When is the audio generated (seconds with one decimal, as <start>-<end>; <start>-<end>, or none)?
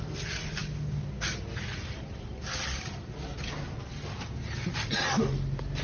none